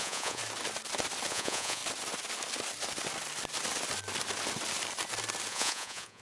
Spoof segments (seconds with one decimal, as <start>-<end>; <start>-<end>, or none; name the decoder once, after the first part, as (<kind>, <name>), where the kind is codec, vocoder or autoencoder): 0.0-0.4 (vocoder, Vocos); 1.3-1.8; 5.5-6.2